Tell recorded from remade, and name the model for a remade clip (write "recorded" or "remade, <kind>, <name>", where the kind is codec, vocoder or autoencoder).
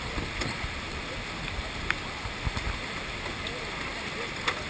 recorded